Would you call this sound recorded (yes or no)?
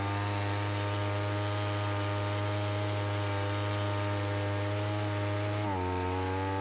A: yes